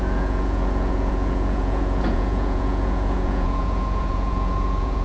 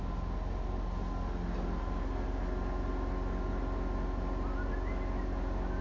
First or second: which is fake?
first